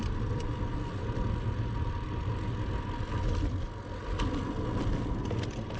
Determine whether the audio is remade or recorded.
recorded